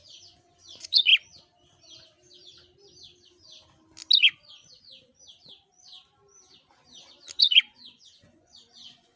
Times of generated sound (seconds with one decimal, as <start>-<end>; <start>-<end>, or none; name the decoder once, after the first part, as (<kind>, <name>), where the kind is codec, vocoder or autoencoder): 0.0-1.1 (vocoder, Vocos); 4.2-5.1; 7.4-9.2